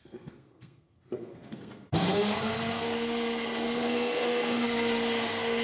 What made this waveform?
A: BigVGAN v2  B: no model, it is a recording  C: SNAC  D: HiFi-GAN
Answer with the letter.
C